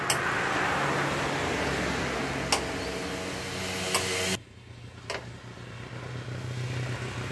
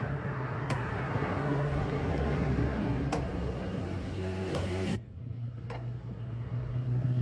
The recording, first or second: first